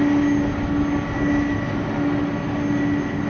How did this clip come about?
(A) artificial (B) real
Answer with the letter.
B